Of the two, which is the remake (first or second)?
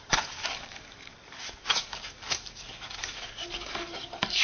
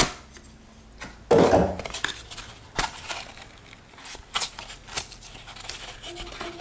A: first